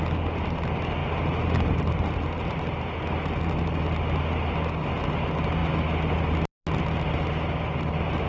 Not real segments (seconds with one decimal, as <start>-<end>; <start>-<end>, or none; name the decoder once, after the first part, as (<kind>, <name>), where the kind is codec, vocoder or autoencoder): none